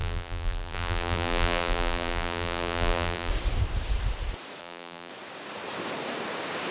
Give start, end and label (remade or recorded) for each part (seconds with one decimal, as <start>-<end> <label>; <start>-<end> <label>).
0.0-3.3 remade; 3.3-4.6 recorded; 4.6-5.1 remade; 5.1-6.7 recorded